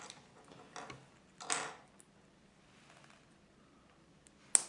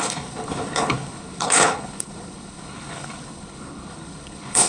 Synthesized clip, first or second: second